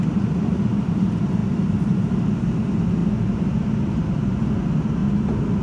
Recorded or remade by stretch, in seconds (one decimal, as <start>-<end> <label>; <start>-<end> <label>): 0.0-1.4 recorded; 1.4-2.0 remade; 2.0-3.0 recorded; 3.0-4.4 remade; 4.4-5.6 recorded